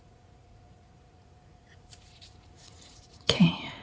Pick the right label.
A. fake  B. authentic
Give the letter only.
A